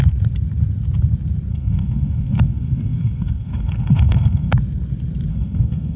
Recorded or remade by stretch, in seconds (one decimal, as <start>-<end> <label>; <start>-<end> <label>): 0.0-1.5 recorded; 1.5-4.5 remade; 4.5-5.3 recorded; 5.3-6.0 remade